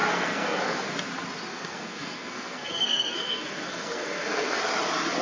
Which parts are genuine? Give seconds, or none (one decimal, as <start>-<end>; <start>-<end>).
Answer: 0.9-1.5; 4.6-5.2